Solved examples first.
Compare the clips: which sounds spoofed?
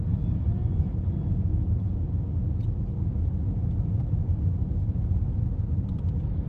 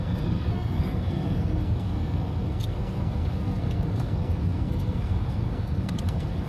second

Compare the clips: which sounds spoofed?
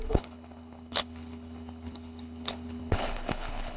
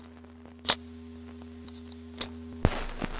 first